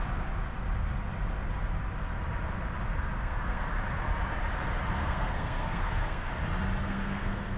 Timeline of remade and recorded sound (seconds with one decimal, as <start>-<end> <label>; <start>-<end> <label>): 0.0-3.2 recorded; 3.2-3.7 remade; 3.7-4.9 recorded; 4.9-6.3 remade; 6.3-6.8 recorded; 6.8-7.6 remade